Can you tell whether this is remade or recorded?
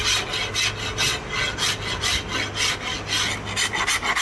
recorded